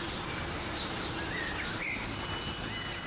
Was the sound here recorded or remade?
recorded